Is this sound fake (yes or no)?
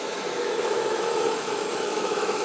yes